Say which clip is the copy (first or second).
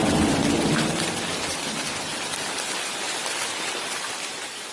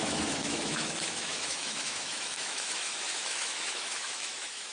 second